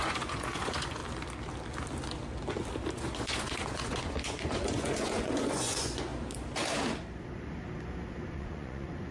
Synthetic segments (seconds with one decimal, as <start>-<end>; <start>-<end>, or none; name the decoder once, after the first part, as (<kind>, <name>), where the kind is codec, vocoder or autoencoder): 0.0-1.0 (vocoder, Vocos); 2.9-6.1; 8.3-9.1

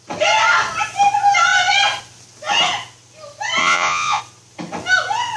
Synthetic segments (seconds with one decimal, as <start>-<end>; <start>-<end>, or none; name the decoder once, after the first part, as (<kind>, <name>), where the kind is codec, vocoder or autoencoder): 3.6-4.2 (vocoder, Vocos)

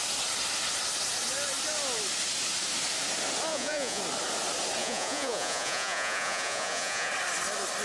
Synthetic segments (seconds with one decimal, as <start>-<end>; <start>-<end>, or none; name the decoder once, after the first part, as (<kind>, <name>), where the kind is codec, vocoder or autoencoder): 3.5-4.0 (vocoder, Vocos); 4.8-7.1

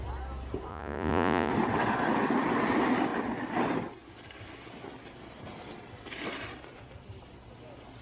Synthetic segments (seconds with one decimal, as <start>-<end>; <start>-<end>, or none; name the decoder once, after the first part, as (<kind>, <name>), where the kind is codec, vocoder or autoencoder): 0.7-1.5 (vocoder, Vocos)

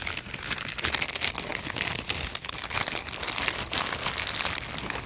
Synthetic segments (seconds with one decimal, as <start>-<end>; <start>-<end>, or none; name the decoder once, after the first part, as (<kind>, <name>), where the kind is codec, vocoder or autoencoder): none

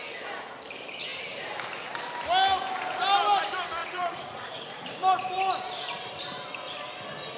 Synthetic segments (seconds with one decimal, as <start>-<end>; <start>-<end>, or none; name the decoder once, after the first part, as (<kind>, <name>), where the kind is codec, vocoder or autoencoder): 3.8-4.9 (vocoder, Vocos)

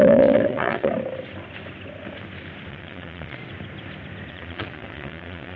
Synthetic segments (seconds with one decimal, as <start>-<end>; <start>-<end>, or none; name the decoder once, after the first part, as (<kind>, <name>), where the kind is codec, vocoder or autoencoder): 0.0-0.9 (vocoder, Vocos); 2.7-3.4; 4.3-5.6

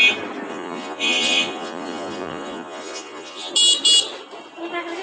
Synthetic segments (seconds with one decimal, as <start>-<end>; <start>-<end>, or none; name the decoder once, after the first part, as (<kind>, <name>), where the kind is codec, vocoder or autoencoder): 0.5-3.5 (vocoder, Vocos)